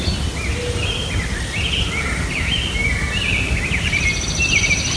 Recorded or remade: recorded